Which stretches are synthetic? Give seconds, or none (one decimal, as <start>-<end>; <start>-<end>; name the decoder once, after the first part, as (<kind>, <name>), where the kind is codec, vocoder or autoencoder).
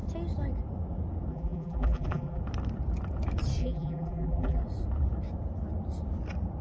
1.3-2.4 (vocoder, BigVGAN v2); 3.6-4.6